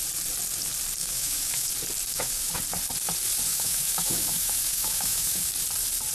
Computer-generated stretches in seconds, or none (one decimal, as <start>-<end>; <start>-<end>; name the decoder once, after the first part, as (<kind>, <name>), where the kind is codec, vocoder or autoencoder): 1.0-1.7 (autoencoder, DAC-VAE); 2.1-2.6; 3.5-5.5